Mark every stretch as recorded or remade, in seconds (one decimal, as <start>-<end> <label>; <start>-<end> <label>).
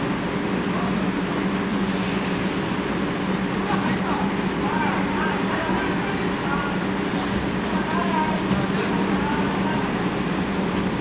0.0-1.7 recorded; 1.7-2.2 remade; 2.2-11.0 recorded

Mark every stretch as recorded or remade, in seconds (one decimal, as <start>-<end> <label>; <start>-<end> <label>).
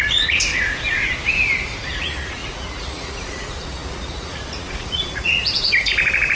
0.0-0.5 remade; 0.5-1.9 recorded; 1.9-5.4 remade; 5.4-6.4 recorded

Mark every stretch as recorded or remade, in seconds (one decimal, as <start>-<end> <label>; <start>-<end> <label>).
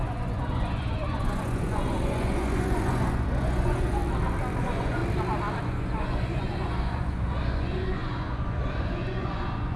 0.0-4.0 remade; 4.0-4.6 recorded; 4.6-5.0 remade; 5.0-5.6 recorded; 5.6-9.8 remade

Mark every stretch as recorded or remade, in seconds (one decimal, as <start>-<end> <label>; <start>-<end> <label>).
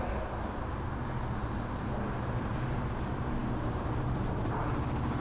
0.0-5.2 recorded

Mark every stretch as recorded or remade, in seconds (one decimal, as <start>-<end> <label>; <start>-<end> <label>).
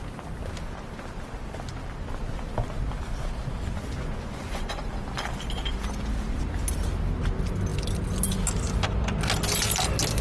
0.0-3.8 recorded; 3.8-4.8 remade; 4.8-10.2 recorded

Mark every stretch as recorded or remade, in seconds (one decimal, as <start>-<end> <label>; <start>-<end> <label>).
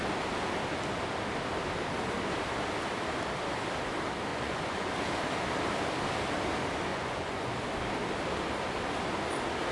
0.0-4.3 recorded; 4.3-4.9 remade; 4.9-6.9 recorded; 6.9-7.5 remade; 7.5-9.7 recorded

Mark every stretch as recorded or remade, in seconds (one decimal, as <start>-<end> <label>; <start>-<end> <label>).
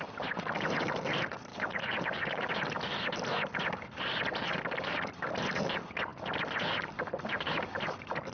0.0-8.3 recorded